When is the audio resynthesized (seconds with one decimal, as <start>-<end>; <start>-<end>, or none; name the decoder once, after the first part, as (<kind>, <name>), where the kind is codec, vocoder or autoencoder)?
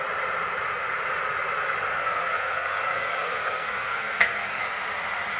1.9-4.6 (codec, SNAC)